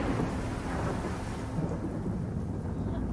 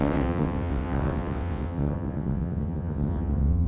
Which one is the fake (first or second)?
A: second